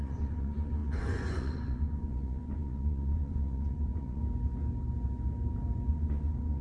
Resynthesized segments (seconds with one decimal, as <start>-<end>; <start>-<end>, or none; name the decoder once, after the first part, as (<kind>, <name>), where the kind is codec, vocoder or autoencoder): 0.0-4.2 (vocoder, Vocos); 5.9-6.6